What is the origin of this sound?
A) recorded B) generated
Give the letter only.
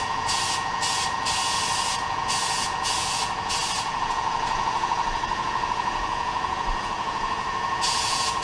B